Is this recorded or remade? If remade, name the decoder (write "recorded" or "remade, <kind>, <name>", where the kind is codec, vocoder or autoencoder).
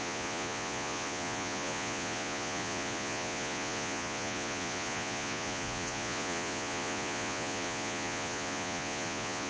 remade, vocoder, Vocos